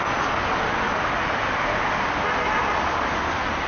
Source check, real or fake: real